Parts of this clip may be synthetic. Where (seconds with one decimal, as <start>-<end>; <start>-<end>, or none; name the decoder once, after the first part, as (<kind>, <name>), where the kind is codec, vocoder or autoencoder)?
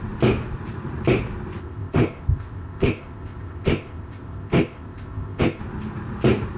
1.6-5.6 (codec, ZipCodec)